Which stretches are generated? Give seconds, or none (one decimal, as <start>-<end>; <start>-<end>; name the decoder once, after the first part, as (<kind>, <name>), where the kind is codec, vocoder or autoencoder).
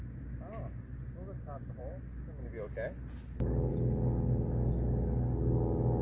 none